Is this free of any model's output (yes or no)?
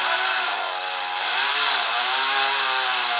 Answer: no